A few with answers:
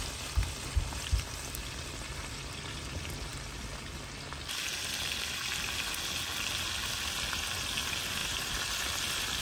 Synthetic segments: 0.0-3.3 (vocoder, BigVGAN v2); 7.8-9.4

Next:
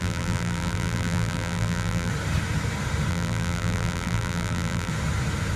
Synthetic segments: 0.0-2.1 (vocoder, BigVGAN v2); 3.1-4.9

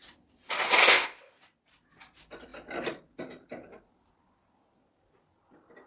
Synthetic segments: 0.9-1.4 (codec, ZipCodec)

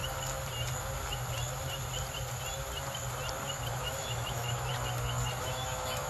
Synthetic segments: 3.7-4.7 (autoencoder, DAC-VAE); 5.4-6.1

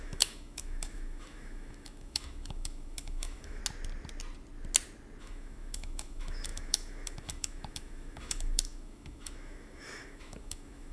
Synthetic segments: 0.0-3.6 (autoencoder, DAC-VAE); 5.2-10.9

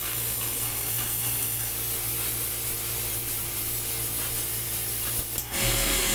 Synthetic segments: 0.0-1.7 (codec, SNAC); 5.4-6.1

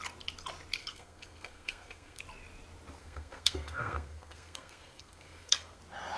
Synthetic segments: 0.8-2.2 (codec, SNAC); 3.0-5.8